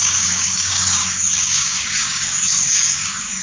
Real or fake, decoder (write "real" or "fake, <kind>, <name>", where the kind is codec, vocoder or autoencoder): fake, codec, DAC